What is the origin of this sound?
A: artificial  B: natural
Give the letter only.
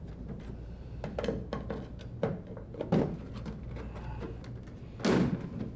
B